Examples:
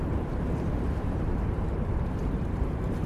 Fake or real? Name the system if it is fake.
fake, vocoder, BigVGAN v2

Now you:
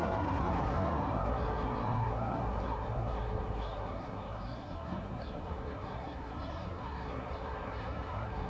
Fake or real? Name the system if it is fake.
fake, codec, SNAC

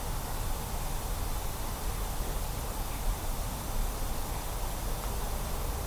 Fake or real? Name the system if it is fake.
real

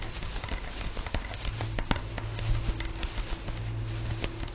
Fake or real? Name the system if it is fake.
real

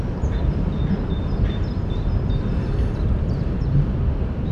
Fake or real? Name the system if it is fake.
real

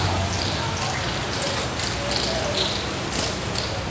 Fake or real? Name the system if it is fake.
real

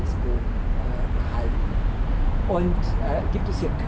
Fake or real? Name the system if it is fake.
real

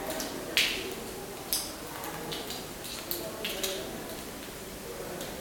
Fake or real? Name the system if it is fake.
real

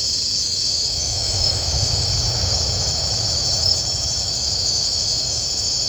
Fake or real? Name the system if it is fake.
fake, autoencoder, DAC-VAE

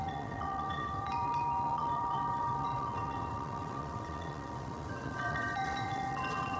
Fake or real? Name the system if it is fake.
fake, vocoder, WaveNeXt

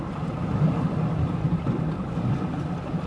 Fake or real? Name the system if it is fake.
real